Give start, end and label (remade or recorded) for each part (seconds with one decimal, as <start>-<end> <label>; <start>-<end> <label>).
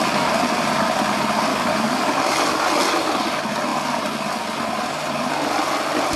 0.0-1.5 recorded; 1.5-2.1 remade; 2.1-6.2 recorded